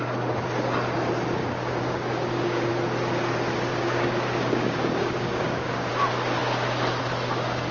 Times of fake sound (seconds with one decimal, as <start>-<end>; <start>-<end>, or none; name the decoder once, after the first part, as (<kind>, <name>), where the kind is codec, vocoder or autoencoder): 1.4-2.7 (codec, DAC); 3.7-5.9